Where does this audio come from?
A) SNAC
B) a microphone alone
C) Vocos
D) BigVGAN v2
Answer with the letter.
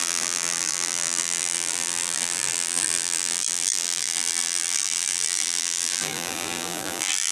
D